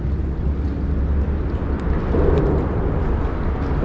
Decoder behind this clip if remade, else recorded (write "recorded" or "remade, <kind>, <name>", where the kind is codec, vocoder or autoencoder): recorded